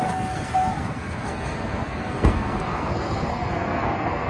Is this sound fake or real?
fake